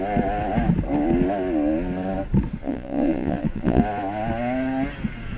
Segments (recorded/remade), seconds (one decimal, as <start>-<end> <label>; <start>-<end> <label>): 0.0-2.6 recorded; 2.6-3.8 remade; 3.8-5.4 recorded